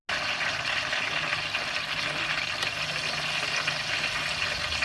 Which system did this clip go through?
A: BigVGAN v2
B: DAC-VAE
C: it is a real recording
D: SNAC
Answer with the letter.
C